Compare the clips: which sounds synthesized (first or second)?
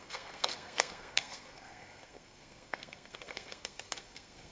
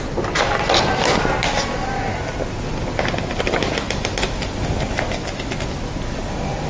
first